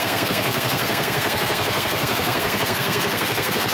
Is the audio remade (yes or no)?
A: yes